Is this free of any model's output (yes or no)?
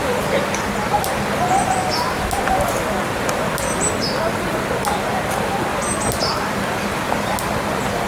yes